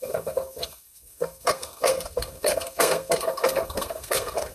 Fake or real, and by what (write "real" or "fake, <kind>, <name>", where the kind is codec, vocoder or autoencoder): fake, codec, SNAC